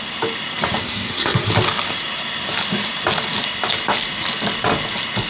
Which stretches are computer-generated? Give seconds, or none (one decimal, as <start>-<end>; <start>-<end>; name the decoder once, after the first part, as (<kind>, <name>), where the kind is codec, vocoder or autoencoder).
0.8-1.5 (codec, SNAC)